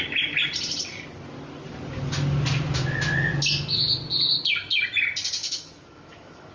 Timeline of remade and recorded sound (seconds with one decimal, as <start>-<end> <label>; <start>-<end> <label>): 0.0-5.4 recorded; 5.4-6.5 remade